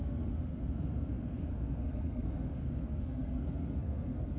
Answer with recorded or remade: remade